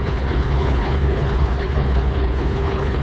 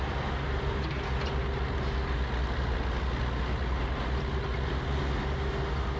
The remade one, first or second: first